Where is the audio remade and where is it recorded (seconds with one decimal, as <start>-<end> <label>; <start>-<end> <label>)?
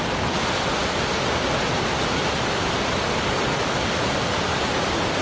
0.0-5.2 recorded